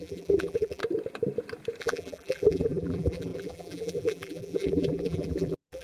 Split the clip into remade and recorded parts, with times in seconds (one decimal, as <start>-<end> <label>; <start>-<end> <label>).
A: 0.0-0.8 remade; 0.8-1.8 recorded; 1.8-5.8 remade